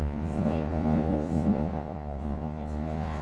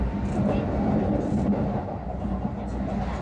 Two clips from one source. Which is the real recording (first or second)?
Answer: second